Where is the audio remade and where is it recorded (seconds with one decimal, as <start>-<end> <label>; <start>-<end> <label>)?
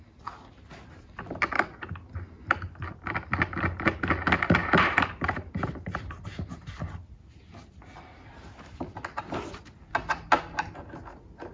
0.0-4.6 recorded; 4.6-6.8 remade; 6.8-11.5 recorded